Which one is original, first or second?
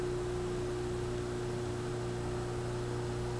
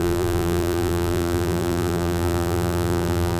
first